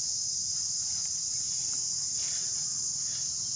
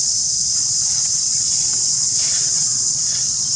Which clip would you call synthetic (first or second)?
second